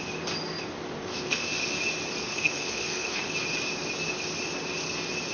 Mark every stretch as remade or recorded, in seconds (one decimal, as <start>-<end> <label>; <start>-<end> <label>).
0.0-1.0 recorded; 1.0-1.6 remade; 1.6-2.2 recorded; 2.2-3.2 remade; 3.2-5.3 recorded